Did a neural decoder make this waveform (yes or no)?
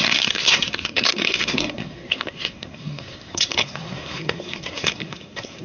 yes